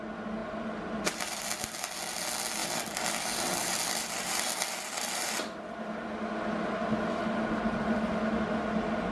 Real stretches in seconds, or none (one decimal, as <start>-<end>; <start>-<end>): 0.0-0.4; 1.4-2.6; 7.0-9.1